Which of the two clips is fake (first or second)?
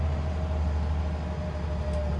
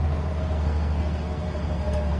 second